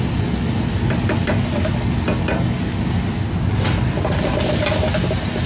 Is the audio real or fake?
real